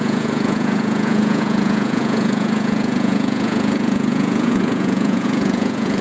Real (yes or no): no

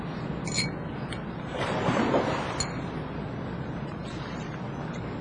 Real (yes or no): yes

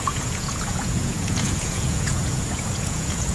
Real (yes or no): no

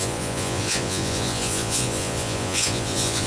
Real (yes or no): no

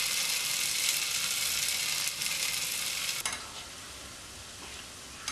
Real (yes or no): yes